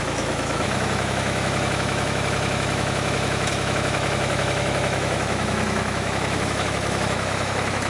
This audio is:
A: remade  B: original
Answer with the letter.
A